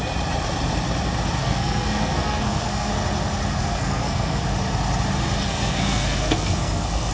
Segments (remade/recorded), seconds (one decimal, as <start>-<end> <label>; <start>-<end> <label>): 0.0-1.4 recorded; 1.4-2.9 remade; 2.9-3.6 recorded; 3.6-4.4 remade; 4.4-5.4 recorded; 5.4-7.1 remade